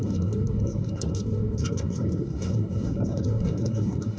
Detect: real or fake fake